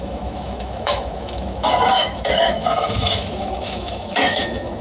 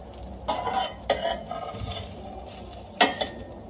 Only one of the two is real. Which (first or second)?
second